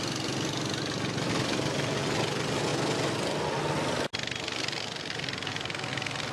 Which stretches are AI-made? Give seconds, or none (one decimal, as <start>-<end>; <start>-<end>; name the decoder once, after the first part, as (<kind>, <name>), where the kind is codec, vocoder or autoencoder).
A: none